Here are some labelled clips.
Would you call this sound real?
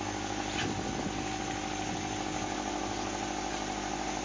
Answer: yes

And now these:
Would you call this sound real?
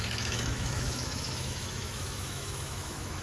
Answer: no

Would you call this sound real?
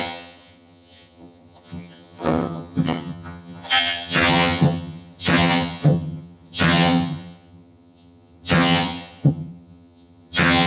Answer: no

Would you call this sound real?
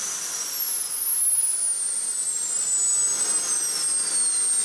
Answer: yes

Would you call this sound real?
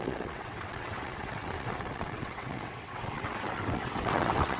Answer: no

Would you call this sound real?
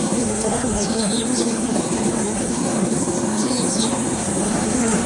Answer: no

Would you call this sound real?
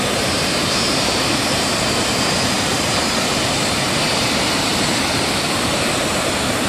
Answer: no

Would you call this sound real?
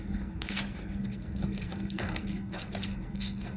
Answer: no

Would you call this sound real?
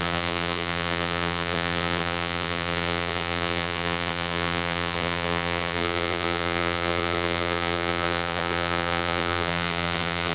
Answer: no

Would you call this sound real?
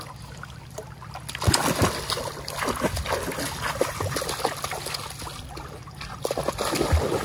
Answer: yes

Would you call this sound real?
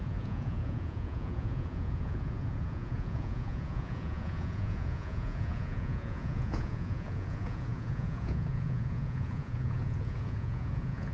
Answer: no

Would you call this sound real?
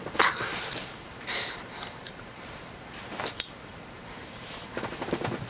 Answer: no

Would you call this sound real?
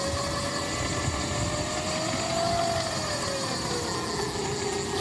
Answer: yes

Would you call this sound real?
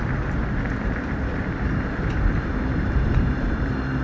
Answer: no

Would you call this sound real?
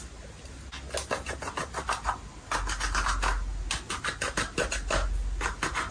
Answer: yes